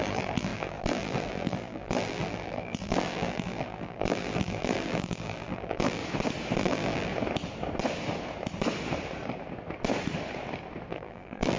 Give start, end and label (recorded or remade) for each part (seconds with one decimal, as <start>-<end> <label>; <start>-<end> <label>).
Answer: 0.0-6.0 remade; 6.0-6.6 recorded; 6.6-7.1 remade; 7.1-10.9 recorded; 10.9-11.6 remade